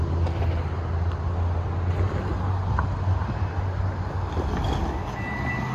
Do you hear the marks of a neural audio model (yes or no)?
no